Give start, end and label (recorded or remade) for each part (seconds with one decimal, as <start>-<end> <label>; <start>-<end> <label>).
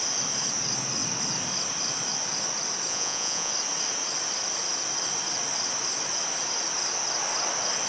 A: 0.0-2.9 recorded; 2.9-3.5 remade; 3.5-7.9 recorded